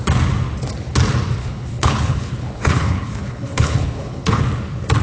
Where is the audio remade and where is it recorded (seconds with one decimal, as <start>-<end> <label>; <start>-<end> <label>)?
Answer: 0.0-1.4 recorded; 1.4-4.4 remade; 4.4-5.0 recorded